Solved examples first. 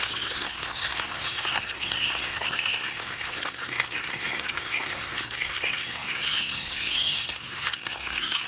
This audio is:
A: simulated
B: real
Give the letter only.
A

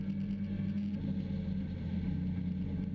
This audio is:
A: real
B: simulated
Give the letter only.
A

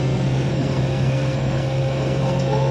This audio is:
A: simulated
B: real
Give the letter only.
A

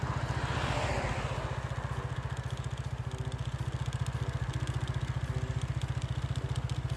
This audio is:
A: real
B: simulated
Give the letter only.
A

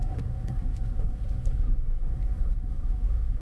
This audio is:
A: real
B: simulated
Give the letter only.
B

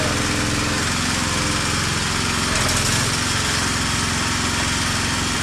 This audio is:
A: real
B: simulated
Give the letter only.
A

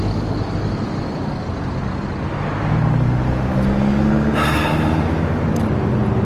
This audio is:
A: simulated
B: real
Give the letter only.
B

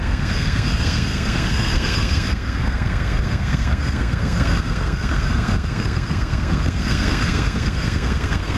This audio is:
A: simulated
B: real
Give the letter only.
A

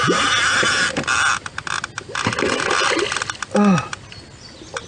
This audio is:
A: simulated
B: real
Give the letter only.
B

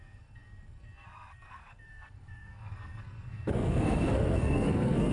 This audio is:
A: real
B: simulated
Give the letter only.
B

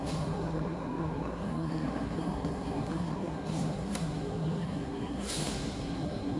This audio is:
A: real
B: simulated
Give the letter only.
B